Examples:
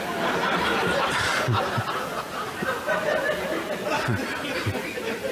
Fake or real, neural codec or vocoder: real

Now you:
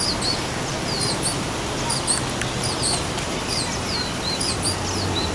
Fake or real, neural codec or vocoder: real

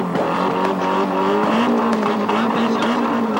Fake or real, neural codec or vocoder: real